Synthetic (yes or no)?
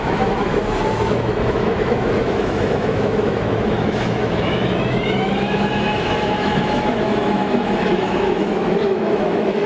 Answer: yes